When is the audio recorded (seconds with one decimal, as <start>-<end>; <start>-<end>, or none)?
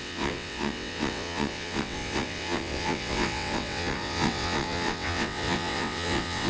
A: none